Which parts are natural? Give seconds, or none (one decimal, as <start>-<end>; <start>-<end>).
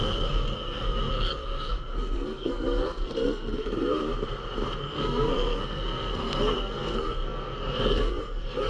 4.0-4.8